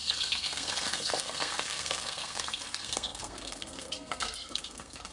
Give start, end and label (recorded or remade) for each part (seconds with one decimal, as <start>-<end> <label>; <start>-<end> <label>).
0.0-5.1 remade